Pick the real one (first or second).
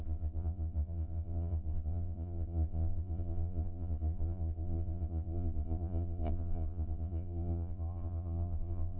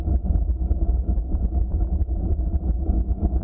second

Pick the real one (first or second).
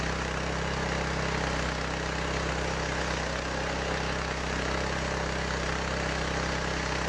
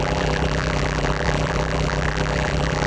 first